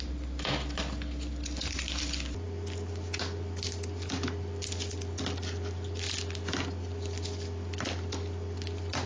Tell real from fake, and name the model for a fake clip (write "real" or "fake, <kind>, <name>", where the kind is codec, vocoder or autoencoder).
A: real